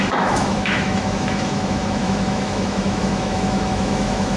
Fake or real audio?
fake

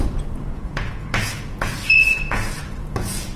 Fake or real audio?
fake